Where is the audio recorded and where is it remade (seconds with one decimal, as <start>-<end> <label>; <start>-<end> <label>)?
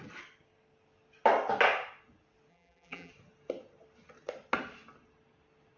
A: 0.0-2.5 recorded; 2.5-3.1 remade; 3.1-5.8 recorded